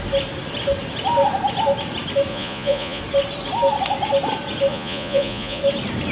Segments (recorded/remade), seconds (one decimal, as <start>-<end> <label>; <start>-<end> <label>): 0.0-2.3 recorded; 2.3-3.0 remade; 3.0-4.7 recorded; 4.7-5.6 remade; 5.6-6.1 recorded